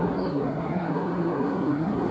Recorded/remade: remade